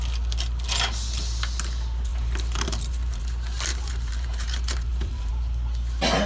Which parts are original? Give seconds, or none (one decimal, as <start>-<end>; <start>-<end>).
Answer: 0.0-2.1; 3.2-3.7; 5.3-6.3